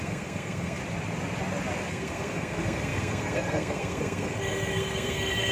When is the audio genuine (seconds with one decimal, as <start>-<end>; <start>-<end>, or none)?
0.8-1.9

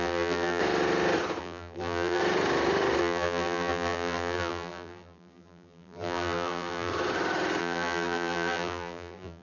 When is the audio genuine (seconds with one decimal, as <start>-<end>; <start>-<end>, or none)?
0.6-1.4; 2.2-3.0; 6.9-7.6